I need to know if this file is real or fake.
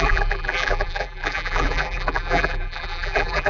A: fake